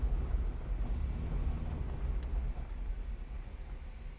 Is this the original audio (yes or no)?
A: yes